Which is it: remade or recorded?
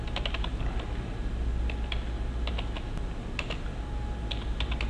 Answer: recorded